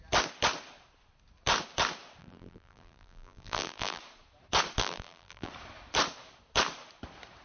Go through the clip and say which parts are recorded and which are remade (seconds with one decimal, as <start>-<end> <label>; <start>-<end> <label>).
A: 0.0-2.2 recorded; 2.2-4.0 remade; 4.0-4.8 recorded; 4.8-5.5 remade; 5.5-7.4 recorded